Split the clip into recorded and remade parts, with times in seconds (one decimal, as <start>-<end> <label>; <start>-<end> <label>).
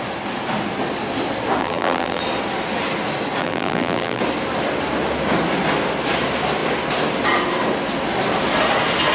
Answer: 0.0-1.6 recorded; 1.6-2.2 remade; 2.2-3.4 recorded; 3.4-4.2 remade; 4.2-9.1 recorded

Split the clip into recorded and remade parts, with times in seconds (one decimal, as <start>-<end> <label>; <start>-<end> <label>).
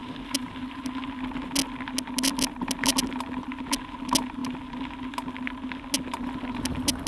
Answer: 0.0-0.9 remade; 0.9-7.1 recorded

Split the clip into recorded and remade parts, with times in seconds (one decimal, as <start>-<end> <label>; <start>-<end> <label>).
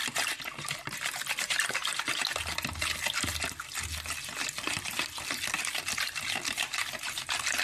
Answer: 0.0-1.8 remade; 1.8-6.4 recorded; 6.4-7.6 remade